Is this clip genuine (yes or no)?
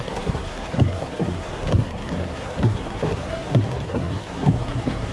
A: no